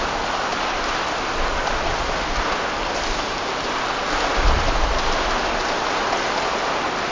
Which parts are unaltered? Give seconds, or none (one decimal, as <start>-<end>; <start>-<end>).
0.0-7.1